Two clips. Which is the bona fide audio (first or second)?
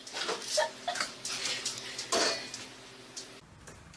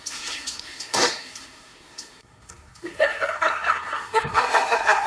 first